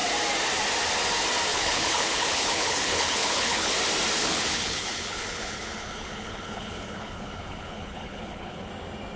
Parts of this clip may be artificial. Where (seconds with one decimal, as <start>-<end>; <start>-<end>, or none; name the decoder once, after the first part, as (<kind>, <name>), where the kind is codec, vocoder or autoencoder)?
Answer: 1.5-3.7 (codec, HILCodec); 4.2-8.7